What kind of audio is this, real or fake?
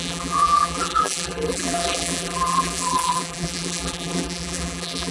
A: fake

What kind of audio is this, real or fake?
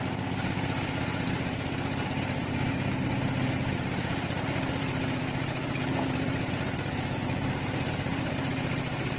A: fake